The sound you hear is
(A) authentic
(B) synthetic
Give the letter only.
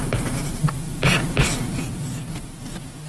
A